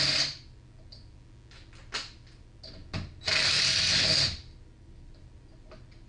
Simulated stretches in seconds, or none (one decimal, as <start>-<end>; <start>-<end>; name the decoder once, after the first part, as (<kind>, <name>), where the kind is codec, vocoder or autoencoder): none